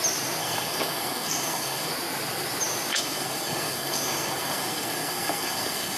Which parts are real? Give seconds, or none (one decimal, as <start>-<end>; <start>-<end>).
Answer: 0.0-0.4; 1.9-2.9